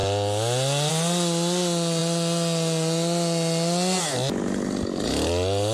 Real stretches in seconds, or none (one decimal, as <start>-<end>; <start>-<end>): 0.0-5.7